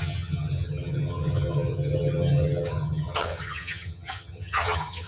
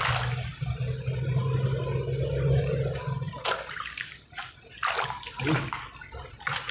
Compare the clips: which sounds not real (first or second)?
first